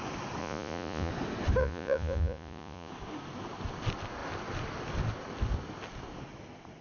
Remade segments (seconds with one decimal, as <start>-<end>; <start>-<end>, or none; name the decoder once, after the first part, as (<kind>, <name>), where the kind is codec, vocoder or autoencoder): 0.4-1.1 (vocoder, Vocos); 1.6-2.9